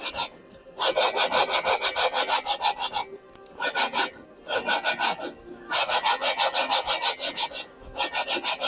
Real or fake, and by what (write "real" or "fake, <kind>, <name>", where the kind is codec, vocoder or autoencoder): real